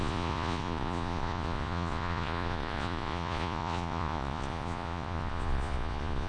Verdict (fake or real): fake